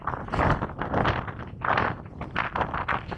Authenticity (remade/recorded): recorded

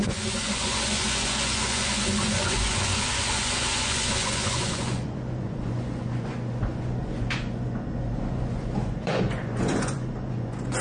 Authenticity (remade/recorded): remade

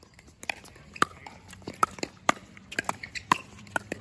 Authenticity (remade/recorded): remade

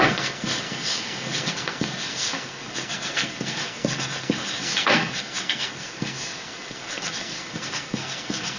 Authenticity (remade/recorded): remade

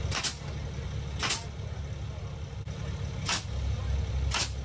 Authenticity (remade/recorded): recorded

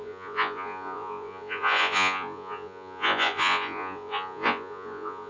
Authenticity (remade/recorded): remade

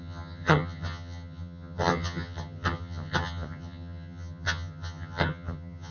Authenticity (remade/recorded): remade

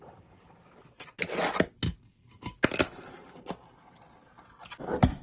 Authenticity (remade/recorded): remade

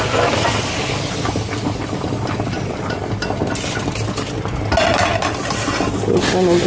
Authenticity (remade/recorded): recorded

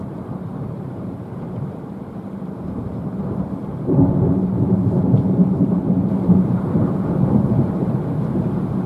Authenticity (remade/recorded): remade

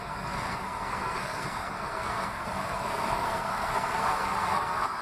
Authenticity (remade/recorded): remade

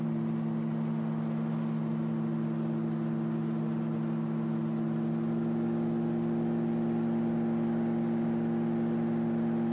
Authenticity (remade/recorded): recorded